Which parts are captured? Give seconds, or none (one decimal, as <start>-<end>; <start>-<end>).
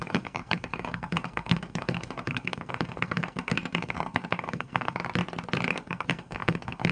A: 5.0-5.7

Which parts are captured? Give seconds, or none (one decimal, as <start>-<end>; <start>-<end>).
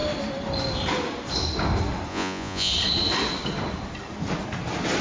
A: 0.0-2.1; 2.7-5.0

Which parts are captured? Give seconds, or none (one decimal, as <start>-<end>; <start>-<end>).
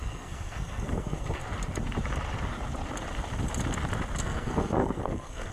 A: 1.4-4.2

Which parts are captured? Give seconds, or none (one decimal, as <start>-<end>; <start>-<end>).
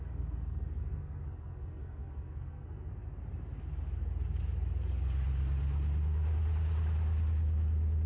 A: 2.9-8.1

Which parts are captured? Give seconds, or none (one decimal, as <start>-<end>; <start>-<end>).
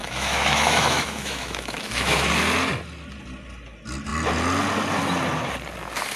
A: 2.3-6.2